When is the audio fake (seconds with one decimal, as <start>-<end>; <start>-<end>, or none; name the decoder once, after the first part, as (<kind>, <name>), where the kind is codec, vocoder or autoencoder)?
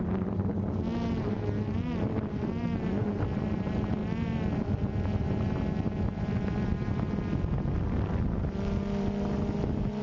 none